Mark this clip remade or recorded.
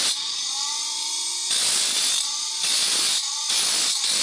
recorded